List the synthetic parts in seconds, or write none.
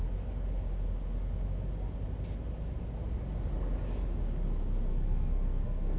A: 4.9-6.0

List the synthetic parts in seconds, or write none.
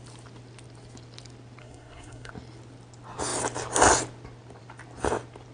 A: 1.6-2.3